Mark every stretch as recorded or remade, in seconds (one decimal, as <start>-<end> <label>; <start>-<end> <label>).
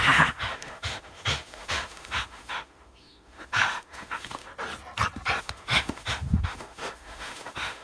0.0-4.5 remade; 4.5-5.4 recorded; 5.4-7.8 remade